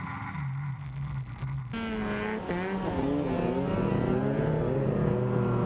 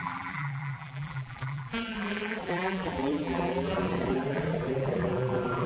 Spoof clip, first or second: second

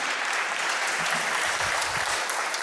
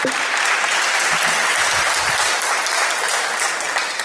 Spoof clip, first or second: first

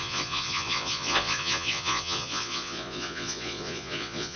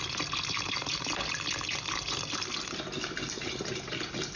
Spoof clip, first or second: first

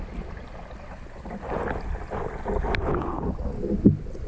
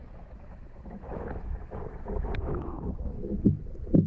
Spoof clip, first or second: second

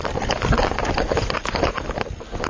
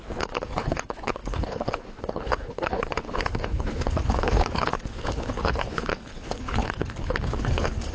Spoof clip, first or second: second